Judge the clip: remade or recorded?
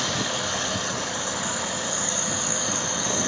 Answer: remade